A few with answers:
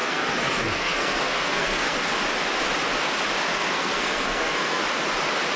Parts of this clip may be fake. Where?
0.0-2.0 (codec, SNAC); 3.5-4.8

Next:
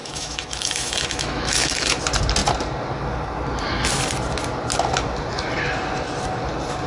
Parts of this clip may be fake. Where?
0.0-2.0 (autoencoder, DAC-VAE)

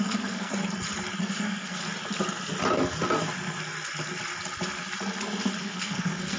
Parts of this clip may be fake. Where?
0.0-0.5 (codec, SNAC); 1.2-1.8; 5.6-6.4

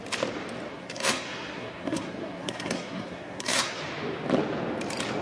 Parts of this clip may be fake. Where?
0.7-3.8 (codec, SNAC)